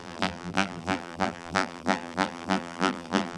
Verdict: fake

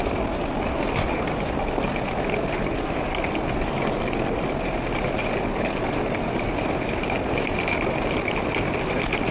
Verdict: real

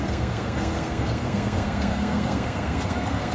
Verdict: fake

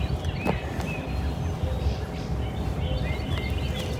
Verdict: real